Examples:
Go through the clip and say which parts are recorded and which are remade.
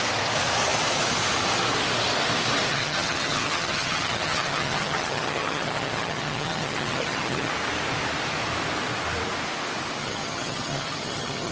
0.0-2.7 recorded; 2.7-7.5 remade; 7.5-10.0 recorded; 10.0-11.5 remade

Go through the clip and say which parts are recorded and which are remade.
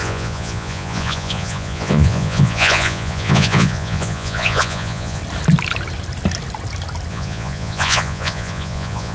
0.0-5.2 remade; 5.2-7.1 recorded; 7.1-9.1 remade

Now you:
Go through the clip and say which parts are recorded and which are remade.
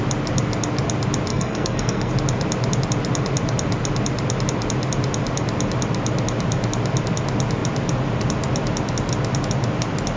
0.0-1.3 recorded; 1.3-2.1 remade; 2.1-10.2 recorded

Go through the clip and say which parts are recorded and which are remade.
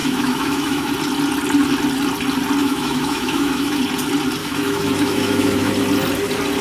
0.0-0.9 remade; 0.9-2.6 recorded; 2.6-3.8 remade; 3.8-4.4 recorded; 4.4-5.7 remade; 5.7-6.6 recorded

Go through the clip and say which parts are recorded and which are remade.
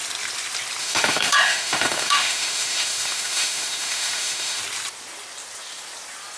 0.0-0.8 recorded; 0.8-4.6 remade; 4.6-6.4 recorded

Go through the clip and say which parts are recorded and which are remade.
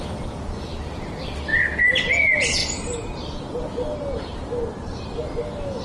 0.0-5.8 recorded